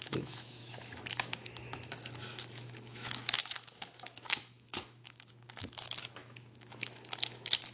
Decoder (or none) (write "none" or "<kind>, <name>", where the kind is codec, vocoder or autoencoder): autoencoder, DAC-VAE